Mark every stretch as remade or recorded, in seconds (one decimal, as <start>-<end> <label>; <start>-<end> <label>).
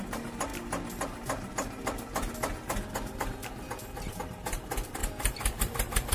0.0-0.5 remade; 0.5-4.2 recorded; 4.2-6.1 remade